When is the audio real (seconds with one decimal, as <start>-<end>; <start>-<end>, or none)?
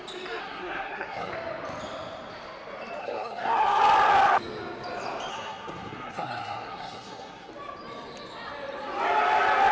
0.0-0.4; 1.3-3.0; 3.8-5.3; 7.5-9.7